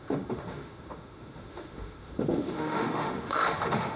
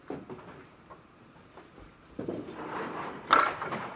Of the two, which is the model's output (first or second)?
first